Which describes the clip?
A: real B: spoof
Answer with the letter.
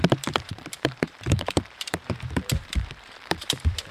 B